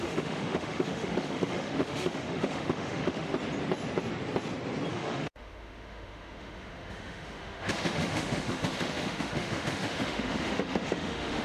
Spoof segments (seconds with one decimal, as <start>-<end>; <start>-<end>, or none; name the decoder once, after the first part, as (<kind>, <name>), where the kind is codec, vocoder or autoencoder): 0.0-3.3 (autoencoder, DAC-VAE); 4.9-11.4